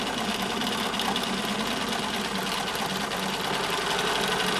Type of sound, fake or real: real